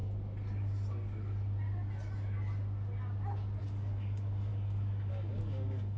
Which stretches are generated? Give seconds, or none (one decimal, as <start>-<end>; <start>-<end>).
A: 3.6-6.0